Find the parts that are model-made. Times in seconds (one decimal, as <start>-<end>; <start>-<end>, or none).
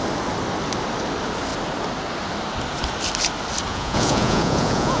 3.7-5.0